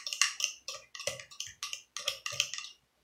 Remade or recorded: recorded